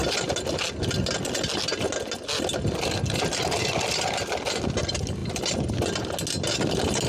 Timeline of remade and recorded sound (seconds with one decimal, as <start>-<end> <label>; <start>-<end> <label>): 0.0-7.1 recorded